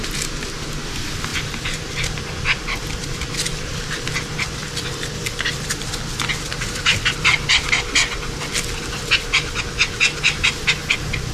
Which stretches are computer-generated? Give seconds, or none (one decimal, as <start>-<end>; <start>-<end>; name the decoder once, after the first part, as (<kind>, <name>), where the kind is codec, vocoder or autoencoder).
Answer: 1.3-3.8 (vocoder, BigVGAN v2); 4.6-9.6